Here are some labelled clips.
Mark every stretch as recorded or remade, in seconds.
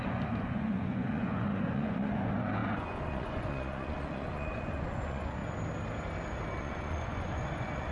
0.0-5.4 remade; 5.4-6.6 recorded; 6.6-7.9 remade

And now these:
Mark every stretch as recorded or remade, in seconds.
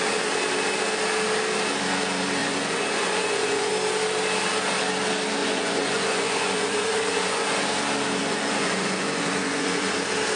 0.0-2.4 recorded; 2.4-3.7 remade; 3.7-5.4 recorded; 5.4-7.6 remade; 7.6-8.2 recorded; 8.2-9.9 remade; 9.9-10.4 recorded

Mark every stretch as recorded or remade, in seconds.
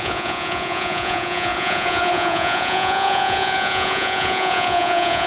0.0-5.3 remade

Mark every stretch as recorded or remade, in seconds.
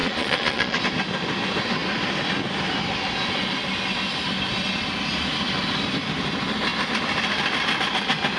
0.0-0.8 remade; 0.8-8.4 recorded